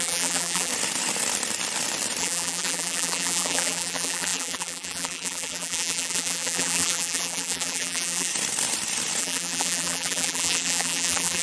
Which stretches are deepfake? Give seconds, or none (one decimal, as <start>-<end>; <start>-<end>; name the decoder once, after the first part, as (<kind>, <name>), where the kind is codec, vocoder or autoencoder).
0.0-0.7 (vocoder, BigVGAN v2); 2.2-8.3; 9.2-11.4